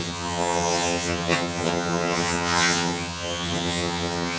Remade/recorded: remade